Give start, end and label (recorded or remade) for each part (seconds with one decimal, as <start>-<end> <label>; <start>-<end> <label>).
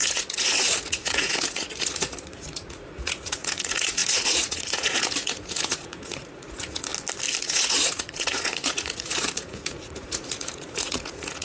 0.0-6.9 remade; 6.9-7.4 recorded; 7.4-11.4 remade